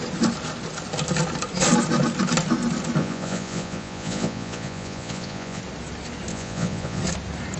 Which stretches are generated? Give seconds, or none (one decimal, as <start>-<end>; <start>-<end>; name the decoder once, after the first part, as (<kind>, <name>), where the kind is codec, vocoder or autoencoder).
3.0-5.6 (vocoder, Vocos); 6.3-7.0